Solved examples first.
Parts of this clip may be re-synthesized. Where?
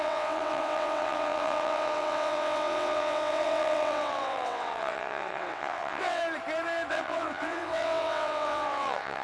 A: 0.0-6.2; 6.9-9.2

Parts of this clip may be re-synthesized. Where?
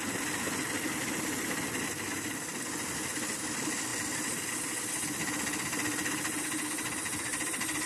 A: none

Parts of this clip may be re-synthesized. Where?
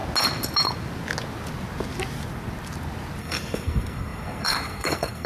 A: 3.2-5.3